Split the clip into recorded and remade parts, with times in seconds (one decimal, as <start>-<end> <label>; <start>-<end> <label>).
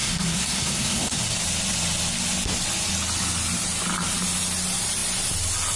0.0-1.2 remade; 1.2-5.8 recorded